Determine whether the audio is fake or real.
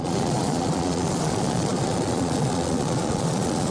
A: fake